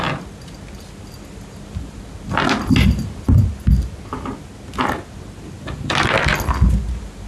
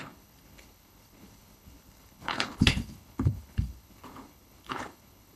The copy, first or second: second